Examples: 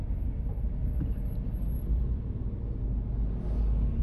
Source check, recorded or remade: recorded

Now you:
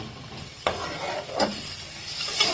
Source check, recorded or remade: recorded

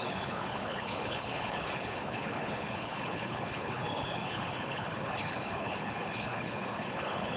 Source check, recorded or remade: remade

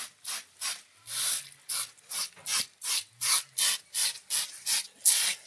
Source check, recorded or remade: recorded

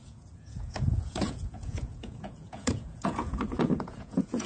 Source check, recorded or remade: remade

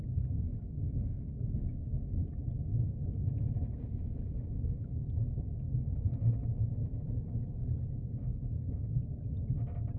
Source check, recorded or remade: recorded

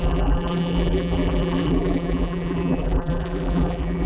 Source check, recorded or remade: remade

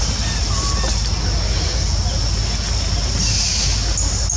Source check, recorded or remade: recorded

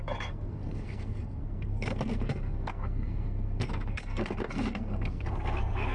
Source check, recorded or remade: remade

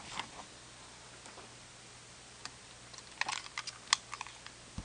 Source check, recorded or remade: recorded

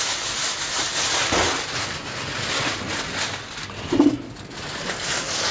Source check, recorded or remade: recorded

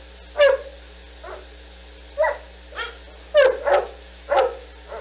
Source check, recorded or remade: recorded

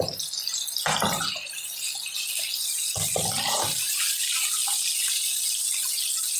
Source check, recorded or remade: recorded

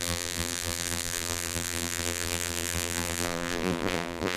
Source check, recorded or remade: remade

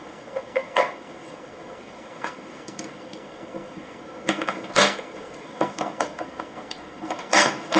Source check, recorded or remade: remade